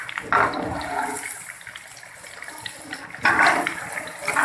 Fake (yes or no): no